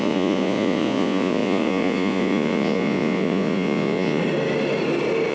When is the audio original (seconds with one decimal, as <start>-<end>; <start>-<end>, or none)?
4.2-5.3